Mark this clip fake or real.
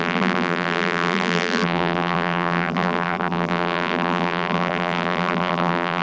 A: fake